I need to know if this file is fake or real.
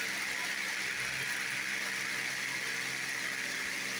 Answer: real